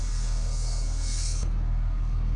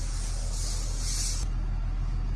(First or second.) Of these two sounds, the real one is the second